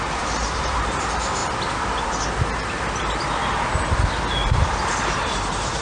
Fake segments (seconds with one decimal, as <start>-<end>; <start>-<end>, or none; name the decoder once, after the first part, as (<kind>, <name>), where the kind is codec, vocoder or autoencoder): 0.0-1.4 (vocoder, BigVGAN v2); 4.9-5.8